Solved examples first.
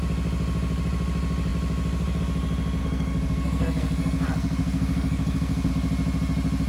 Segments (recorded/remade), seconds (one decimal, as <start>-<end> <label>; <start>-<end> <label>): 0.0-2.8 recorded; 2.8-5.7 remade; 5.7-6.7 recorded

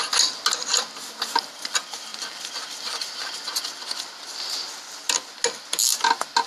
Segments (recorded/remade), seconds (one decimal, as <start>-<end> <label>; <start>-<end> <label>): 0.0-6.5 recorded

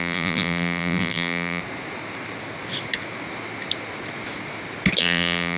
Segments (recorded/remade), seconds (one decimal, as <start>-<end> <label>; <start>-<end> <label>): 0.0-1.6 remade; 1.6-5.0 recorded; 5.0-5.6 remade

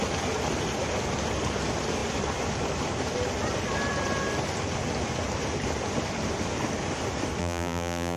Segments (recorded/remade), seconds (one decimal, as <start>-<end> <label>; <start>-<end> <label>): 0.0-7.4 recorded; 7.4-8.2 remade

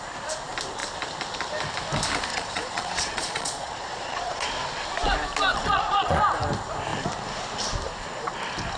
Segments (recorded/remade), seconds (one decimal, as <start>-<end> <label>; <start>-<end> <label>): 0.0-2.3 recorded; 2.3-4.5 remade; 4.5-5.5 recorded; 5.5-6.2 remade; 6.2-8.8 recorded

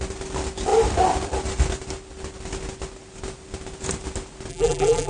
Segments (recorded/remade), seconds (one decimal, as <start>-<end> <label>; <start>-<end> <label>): 0.0-4.5 recorded; 4.5-5.1 remade

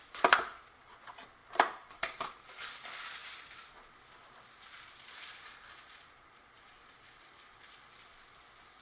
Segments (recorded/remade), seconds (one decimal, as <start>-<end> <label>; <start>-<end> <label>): 0.0-1.4 recorded; 1.4-2.7 remade; 2.7-8.8 recorded